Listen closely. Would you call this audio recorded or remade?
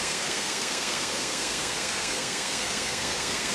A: remade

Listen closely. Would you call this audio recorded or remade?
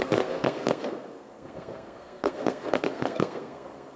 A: remade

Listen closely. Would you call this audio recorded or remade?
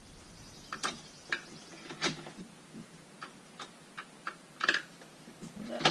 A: recorded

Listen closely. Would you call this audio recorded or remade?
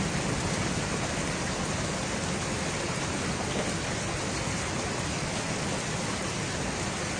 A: recorded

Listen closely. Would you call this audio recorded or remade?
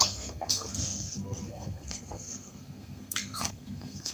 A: remade